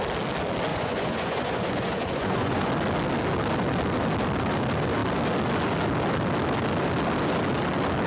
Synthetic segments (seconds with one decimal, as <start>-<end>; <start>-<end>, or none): 0.7-2.7